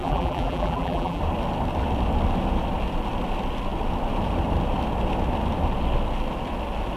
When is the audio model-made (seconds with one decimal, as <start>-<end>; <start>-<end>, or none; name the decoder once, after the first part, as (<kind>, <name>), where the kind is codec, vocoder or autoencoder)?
0.0-1.2 (vocoder, BigVGAN v2)